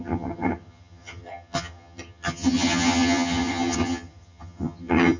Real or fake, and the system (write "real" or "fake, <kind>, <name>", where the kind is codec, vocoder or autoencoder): fake, vocoder, HiFi-GAN